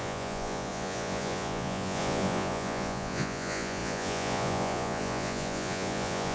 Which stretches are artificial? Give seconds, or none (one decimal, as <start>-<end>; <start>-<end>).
0.0-6.3